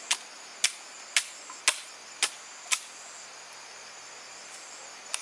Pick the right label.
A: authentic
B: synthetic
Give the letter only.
A